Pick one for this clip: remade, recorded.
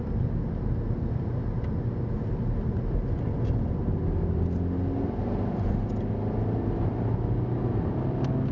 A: recorded